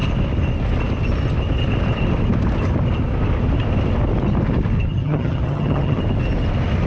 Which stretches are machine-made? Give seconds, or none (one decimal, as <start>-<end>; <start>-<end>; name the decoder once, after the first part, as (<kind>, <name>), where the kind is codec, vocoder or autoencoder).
4.9-6.0 (vocoder, HiFi-GAN)